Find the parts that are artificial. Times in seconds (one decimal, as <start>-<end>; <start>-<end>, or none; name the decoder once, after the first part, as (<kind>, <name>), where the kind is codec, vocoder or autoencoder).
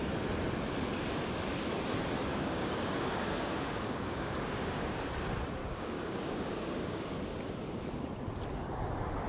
2.3-5.1 (codec, DAC); 5.6-7.1